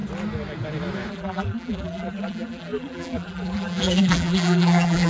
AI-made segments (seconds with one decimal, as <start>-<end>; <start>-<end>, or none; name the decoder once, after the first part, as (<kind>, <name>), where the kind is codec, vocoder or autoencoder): 1.1-5.1 (vocoder, BigVGAN v2)